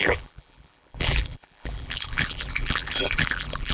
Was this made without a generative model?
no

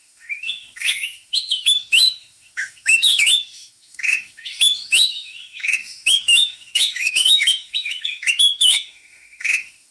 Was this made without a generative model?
no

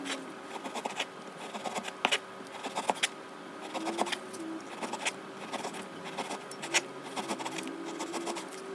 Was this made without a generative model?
yes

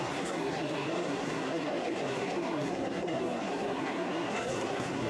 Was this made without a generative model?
no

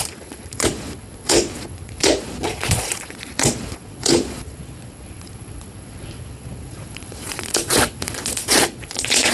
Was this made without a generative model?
no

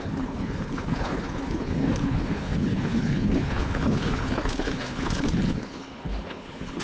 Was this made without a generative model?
no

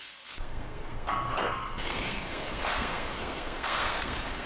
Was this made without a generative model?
no